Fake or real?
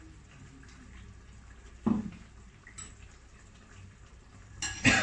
real